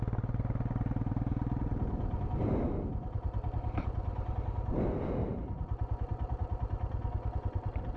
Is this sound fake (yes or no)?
no